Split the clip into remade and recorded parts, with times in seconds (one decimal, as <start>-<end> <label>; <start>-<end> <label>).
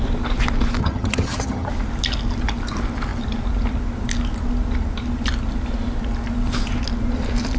0.0-0.8 recorded; 0.8-1.7 remade; 1.7-7.6 recorded